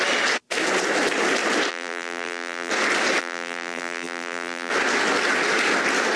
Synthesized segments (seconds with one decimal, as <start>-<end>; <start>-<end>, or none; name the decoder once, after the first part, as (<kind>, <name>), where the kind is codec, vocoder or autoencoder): 1.7-2.7 (vocoder, BigVGAN v2); 3.2-4.7